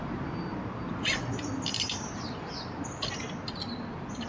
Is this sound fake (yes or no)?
no